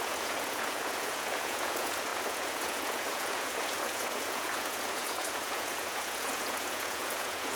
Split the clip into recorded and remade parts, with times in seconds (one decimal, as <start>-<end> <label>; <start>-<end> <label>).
0.0-7.6 remade